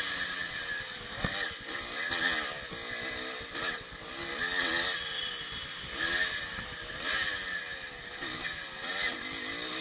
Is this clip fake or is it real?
real